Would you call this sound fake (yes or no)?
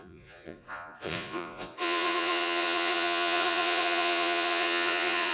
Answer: yes